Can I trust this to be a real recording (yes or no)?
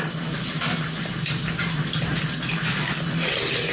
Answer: yes